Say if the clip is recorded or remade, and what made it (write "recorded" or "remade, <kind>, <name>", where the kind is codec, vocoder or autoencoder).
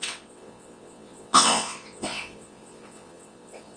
remade, vocoder, WaveNeXt